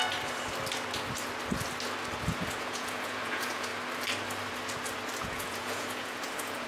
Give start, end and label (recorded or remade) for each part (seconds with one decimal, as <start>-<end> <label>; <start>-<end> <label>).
0.0-2.2 recorded; 2.2-3.7 remade; 3.7-5.2 recorded; 5.2-6.7 remade